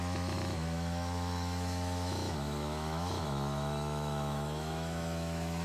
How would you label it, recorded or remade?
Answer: remade